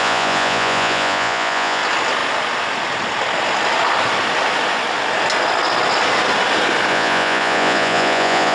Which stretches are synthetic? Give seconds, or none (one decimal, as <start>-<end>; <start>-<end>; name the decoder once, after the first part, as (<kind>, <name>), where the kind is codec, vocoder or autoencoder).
0.0-1.8 (vocoder, Vocos); 6.9-8.5